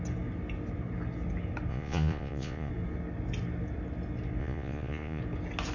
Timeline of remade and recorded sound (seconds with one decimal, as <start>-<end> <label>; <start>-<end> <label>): 0.0-1.7 recorded; 1.7-2.7 remade; 2.7-4.4 recorded; 4.4-5.2 remade; 5.2-5.7 recorded